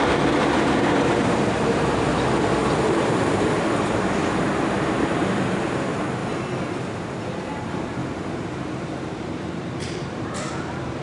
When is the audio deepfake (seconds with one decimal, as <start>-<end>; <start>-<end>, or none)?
0.0-2.1; 2.9-6.2; 7.4-8.0; 9.0-11.0